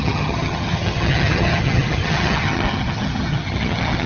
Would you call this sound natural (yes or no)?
no